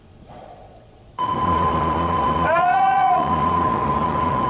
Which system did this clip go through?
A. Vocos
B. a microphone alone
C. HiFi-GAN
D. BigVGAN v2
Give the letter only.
A